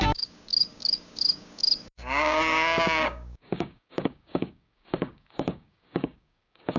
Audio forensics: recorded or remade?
remade